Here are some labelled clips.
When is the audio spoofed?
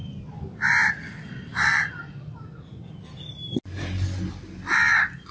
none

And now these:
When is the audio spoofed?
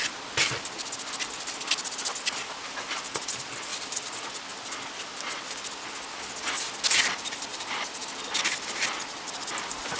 3.7-4.3; 7.5-8.2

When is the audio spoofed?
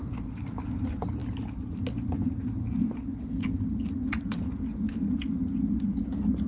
none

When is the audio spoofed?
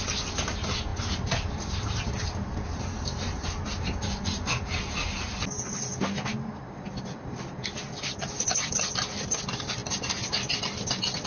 0.0-0.9; 1.5-5.3; 9.4-9.8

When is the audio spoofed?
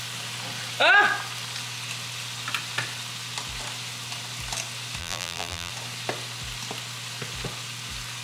5.0-5.7